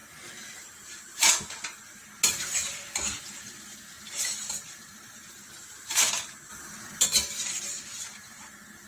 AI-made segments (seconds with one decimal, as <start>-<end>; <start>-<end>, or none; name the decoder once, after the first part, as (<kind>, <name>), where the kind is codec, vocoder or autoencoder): 0.0-2.2 (vocoder, BigVGAN v2); 2.6-6.1